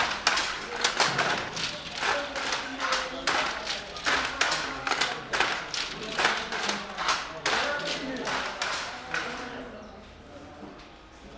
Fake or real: real